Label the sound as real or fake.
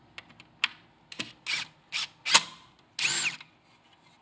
real